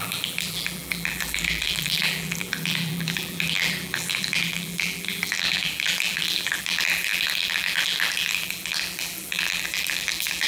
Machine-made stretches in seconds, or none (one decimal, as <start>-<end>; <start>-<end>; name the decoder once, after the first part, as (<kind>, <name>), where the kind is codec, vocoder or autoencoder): 0.0-10.5 (vocoder, BigVGAN v2)

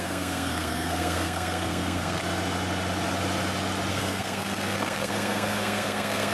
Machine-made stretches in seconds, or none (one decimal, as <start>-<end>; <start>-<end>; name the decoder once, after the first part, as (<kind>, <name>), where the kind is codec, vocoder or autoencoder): 0.0-2.2 (codec, SNAC); 3.9-6.3